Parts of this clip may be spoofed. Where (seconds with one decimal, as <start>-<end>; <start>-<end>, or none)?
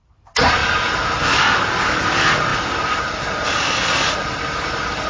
none